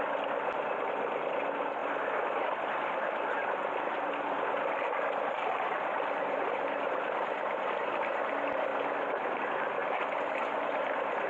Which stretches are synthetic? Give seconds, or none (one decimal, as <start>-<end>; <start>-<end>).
1.8-6.4; 9.8-10.8